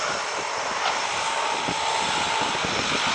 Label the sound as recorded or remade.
recorded